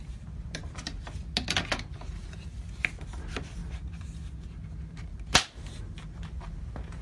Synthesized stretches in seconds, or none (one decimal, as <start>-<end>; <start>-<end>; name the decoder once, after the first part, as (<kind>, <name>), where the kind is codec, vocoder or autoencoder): none